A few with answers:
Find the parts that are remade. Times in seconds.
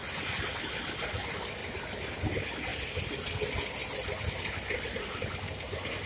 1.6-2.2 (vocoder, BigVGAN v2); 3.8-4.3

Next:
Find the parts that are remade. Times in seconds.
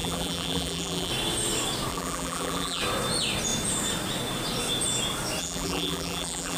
0.0-1.1 (vocoder, BigVGAN v2); 1.9-2.8; 5.4-6.6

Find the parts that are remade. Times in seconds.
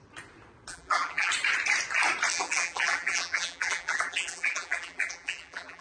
0.7-1.3 (vocoder, BigVGAN v2); 2.3-5.8